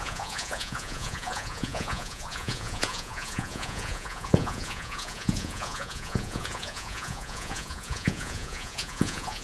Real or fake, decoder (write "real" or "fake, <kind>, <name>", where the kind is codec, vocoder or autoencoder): fake, vocoder, Vocos